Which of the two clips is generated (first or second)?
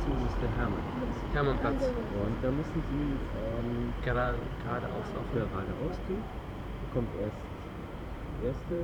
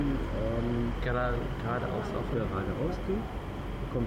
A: first